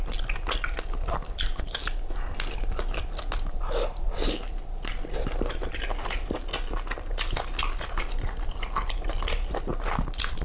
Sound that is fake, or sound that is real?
real